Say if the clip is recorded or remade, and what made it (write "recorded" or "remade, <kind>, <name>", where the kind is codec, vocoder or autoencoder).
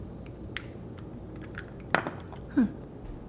recorded